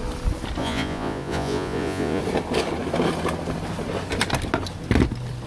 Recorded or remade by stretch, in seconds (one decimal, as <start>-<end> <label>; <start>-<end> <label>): 0.0-0.6 recorded; 0.6-2.2 remade; 2.2-5.5 recorded